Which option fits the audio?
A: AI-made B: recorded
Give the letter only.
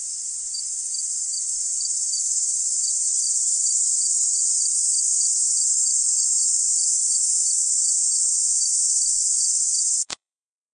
A